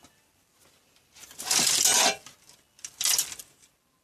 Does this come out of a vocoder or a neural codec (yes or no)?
no